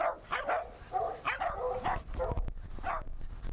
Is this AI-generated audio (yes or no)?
no